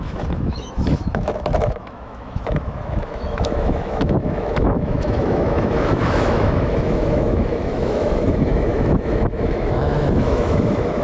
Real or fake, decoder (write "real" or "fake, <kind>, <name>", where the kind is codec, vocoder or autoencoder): fake, autoencoder, DAC-VAE